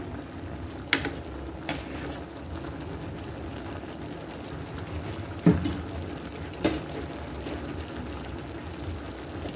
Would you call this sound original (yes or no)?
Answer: yes